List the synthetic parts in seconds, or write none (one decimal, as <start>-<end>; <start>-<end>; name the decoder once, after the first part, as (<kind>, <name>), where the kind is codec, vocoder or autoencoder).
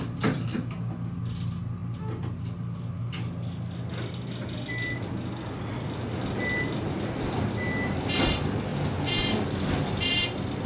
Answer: none